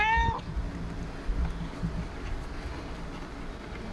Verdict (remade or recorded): recorded